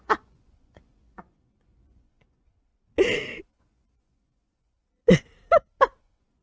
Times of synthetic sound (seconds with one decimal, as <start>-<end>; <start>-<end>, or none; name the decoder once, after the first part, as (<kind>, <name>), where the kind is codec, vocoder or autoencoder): 0.0-2.7 (vocoder, Vocos); 3.4-5.0; 6.0-6.4